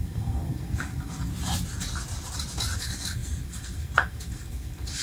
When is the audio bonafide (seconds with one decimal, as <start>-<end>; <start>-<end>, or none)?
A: 1.3-2.8